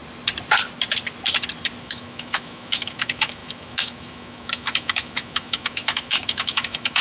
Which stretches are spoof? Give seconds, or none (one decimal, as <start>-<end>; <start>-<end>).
1.8-7.0